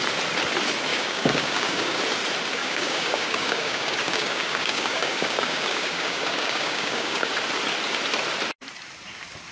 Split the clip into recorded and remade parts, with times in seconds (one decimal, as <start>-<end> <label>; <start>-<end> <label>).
0.0-0.9 recorded; 0.9-2.0 remade; 2.0-2.6 recorded; 2.6-7.3 remade; 7.3-9.5 recorded